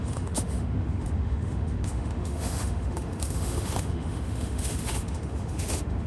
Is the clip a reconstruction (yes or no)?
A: yes